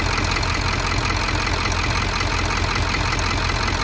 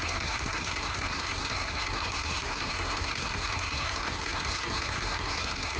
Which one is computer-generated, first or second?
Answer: second